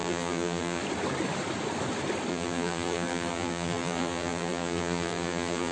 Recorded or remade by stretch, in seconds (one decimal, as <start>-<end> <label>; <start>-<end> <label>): 0.0-0.8 remade; 0.8-2.3 recorded; 2.3-5.7 remade